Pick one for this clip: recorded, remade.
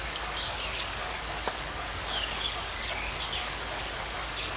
remade